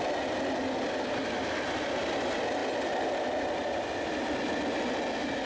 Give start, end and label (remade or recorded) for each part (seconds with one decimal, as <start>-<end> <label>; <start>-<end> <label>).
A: 0.0-5.5 recorded